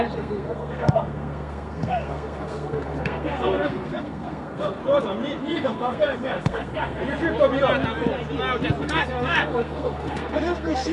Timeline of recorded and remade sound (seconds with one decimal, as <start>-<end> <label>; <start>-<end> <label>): 0.0-4.8 remade; 4.8-5.4 recorded; 5.4-7.0 remade; 7.0-8.8 recorded; 8.8-10.9 remade